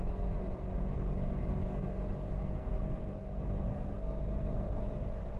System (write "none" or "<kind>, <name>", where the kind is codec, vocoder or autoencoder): codec, SNAC